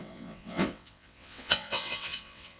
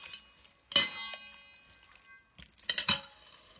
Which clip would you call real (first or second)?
second